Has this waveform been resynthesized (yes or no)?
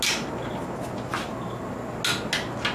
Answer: no